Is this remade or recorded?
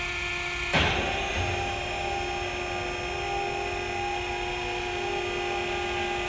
recorded